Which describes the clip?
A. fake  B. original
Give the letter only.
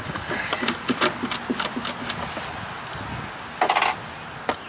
B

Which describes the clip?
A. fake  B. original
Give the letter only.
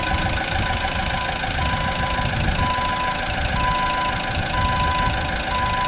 B